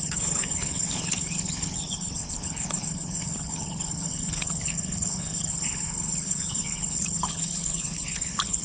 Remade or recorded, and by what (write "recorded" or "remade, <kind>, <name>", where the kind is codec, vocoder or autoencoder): remade, codec, HILCodec